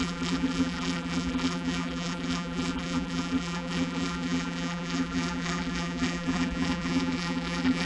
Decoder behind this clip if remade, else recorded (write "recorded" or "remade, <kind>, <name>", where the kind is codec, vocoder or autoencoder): remade, vocoder, BigVGAN v2